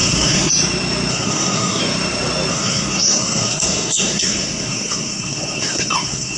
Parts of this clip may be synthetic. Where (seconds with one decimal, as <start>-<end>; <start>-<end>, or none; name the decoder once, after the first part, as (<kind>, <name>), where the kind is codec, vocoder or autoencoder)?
0.0-0.5 (codec, SNAC); 1.1-1.8; 2.5-6.4